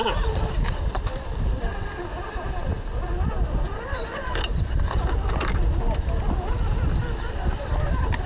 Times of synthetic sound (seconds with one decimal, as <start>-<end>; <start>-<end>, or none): 0.7-2.6; 7.3-8.3